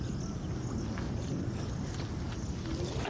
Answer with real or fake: real